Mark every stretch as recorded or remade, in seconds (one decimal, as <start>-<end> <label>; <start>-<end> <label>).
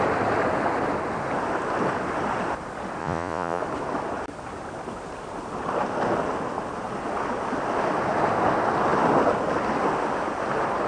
0.0-3.0 recorded; 3.0-3.6 remade; 3.6-10.9 recorded